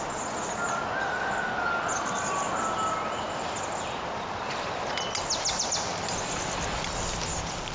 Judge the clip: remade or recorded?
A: recorded